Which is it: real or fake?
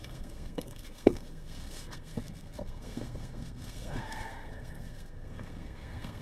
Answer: fake